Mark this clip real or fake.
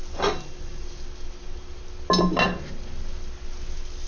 real